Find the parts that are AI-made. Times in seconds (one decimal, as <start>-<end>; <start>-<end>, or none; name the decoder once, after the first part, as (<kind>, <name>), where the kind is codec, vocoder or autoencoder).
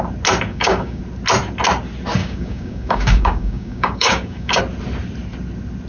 0.5-1.0 (codec, DAC); 2.2-4.6